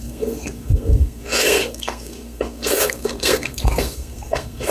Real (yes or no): no